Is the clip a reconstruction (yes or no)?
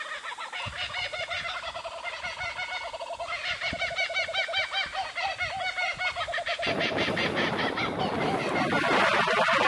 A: no